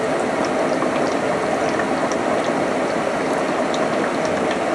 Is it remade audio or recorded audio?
recorded